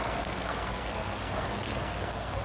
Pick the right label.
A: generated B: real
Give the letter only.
A